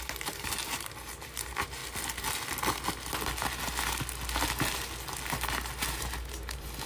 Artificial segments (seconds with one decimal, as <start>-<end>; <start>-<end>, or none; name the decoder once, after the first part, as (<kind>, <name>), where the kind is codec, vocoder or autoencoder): 0.0-1.8 (vocoder, BigVGAN v2); 5.9-6.9